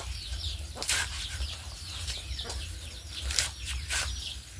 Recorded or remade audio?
remade